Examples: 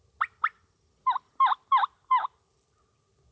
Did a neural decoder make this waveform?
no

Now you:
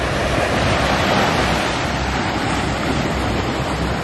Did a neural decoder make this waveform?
no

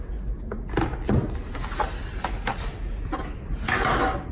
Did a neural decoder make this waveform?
no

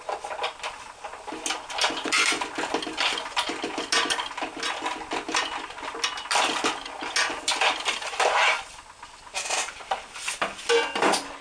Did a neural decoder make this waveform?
no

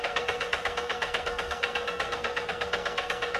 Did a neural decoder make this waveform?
yes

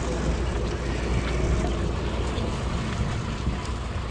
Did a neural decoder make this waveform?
no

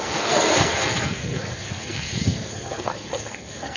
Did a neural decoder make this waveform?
yes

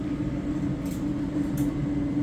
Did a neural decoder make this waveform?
no